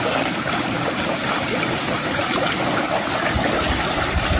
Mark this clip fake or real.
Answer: real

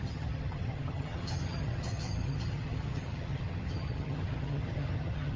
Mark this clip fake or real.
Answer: fake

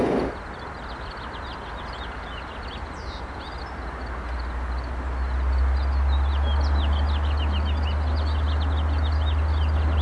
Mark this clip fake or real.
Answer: real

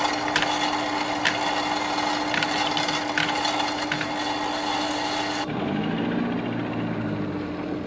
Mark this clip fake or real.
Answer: real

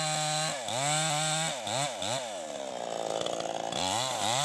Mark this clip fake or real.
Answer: real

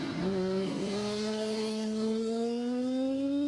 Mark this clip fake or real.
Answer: fake